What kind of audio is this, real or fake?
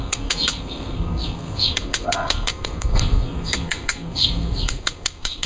fake